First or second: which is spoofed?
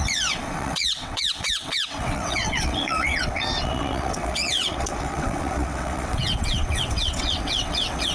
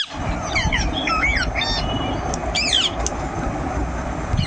first